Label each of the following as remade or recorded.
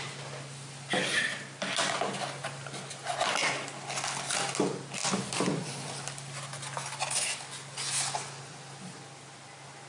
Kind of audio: recorded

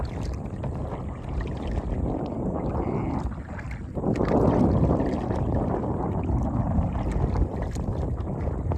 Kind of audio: recorded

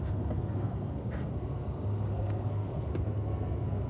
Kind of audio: remade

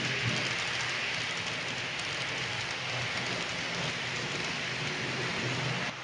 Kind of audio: recorded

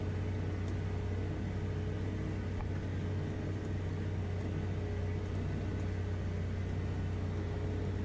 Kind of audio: recorded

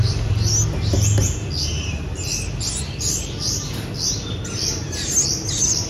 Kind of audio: recorded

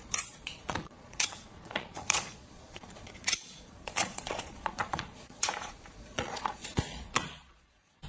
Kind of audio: remade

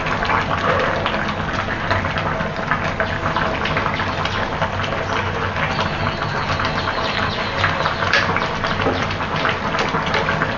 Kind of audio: recorded